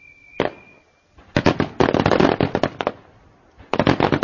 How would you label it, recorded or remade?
recorded